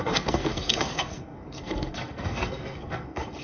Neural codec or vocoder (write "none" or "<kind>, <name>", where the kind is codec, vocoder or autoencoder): codec, SNAC